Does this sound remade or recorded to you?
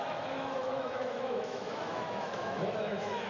remade